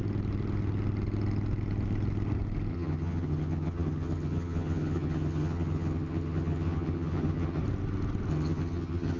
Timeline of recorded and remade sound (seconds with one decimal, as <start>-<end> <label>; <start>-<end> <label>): 0.0-2.7 recorded; 2.7-7.6 remade; 7.6-8.3 recorded; 8.3-9.2 remade